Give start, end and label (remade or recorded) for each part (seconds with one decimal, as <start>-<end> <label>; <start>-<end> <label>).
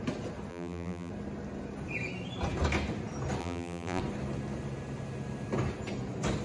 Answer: 0.0-0.5 recorded; 0.5-1.1 remade; 1.1-3.4 recorded; 3.4-4.0 remade; 4.0-6.4 recorded